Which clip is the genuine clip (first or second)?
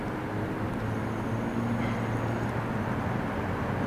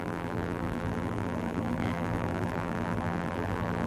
first